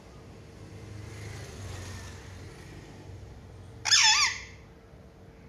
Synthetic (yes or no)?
no